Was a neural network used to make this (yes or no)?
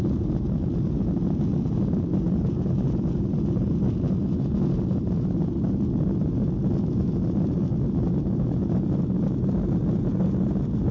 no